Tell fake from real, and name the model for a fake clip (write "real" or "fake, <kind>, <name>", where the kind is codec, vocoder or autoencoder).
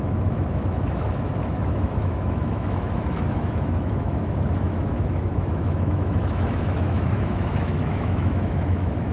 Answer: fake, autoencoder, DAC-VAE